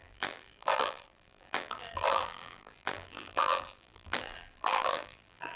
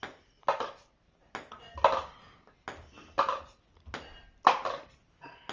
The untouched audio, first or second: second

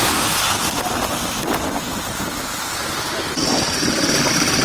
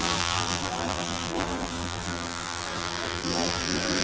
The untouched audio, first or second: first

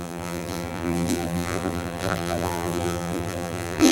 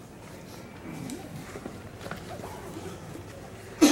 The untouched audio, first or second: second